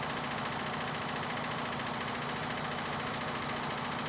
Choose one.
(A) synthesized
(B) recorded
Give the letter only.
B